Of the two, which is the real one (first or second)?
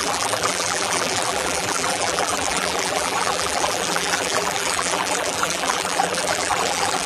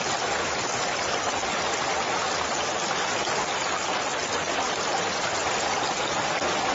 second